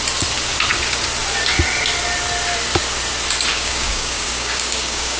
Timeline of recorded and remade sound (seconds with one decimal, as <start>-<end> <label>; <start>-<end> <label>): 0.0-3.5 recorded; 3.5-5.2 remade